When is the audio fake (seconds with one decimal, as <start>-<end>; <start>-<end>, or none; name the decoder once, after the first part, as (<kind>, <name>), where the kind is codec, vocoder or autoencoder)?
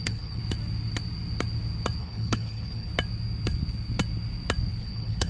0.0-0.4 (codec, HILCodec); 2.0-2.9; 4.8-5.3